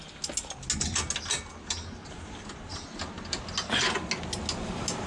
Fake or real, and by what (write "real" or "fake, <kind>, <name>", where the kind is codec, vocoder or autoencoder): real